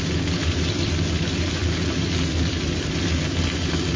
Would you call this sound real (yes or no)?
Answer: yes